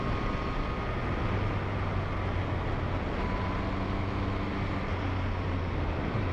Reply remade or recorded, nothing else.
recorded